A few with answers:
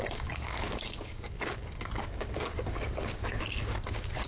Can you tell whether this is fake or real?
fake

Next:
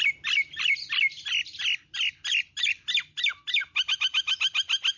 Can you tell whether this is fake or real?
real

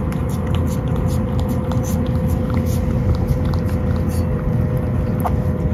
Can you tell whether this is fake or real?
real